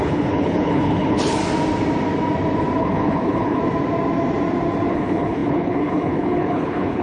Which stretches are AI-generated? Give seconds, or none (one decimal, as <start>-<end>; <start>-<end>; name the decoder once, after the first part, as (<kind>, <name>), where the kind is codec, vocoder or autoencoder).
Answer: 0.0-1.4 (codec, HILCodec); 2.8-3.6; 4.9-7.0